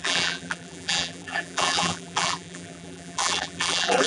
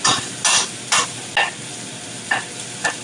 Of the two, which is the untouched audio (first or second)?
second